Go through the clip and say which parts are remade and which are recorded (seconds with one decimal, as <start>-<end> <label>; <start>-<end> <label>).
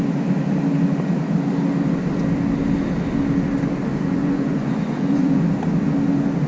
0.0-3.9 recorded; 3.9-5.4 remade; 5.4-6.5 recorded